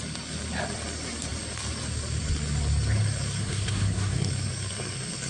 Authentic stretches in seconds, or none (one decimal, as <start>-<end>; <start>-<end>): 0.0-3.4; 4.3-5.3